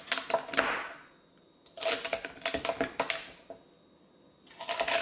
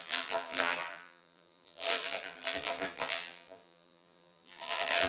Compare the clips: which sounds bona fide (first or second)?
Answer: first